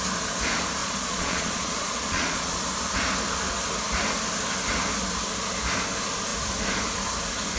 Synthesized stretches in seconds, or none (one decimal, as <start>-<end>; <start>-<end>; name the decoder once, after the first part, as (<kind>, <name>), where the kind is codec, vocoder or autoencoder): 0.8-2.6 (vocoder, Vocos)